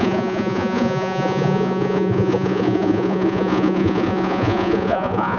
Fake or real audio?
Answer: fake